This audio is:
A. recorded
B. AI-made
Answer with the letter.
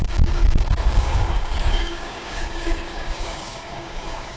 B